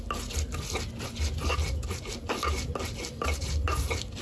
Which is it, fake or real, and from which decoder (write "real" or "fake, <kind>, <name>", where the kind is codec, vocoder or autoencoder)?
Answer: real